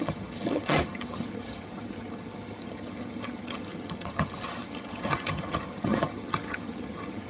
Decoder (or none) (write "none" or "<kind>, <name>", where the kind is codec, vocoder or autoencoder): vocoder, HiFi-GAN